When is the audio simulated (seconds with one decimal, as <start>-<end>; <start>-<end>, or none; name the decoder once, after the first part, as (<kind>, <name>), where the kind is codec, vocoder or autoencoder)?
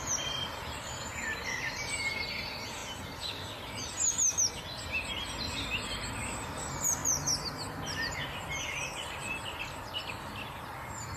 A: 0.5-1.0 (vocoder, BigVGAN v2)